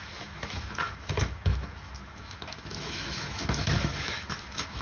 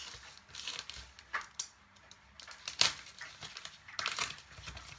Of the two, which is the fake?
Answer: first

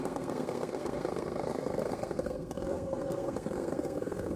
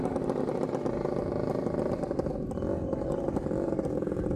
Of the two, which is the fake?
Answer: first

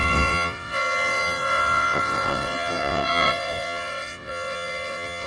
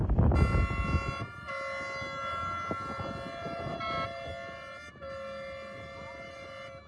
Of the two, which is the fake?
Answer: first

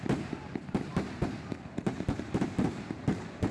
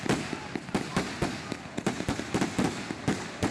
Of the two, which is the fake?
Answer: first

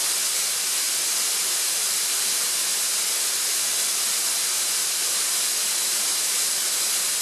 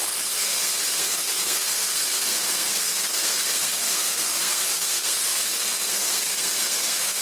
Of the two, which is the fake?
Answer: second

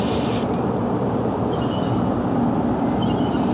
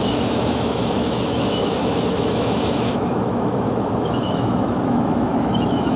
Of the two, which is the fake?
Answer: second